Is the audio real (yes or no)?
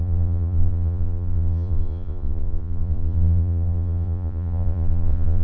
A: no